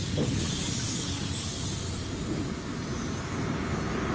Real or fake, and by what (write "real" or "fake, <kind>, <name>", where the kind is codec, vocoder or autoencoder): real